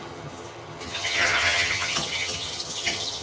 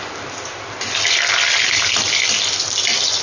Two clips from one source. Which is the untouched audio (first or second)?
second